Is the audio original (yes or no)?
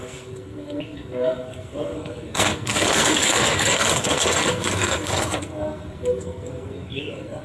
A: no